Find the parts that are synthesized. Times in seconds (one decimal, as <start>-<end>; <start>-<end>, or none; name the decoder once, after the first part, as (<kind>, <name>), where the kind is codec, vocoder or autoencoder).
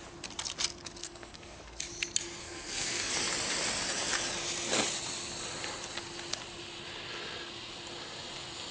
1.0-1.8 (codec, SNAC); 2.4-3.1